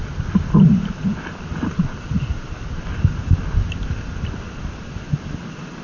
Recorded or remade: recorded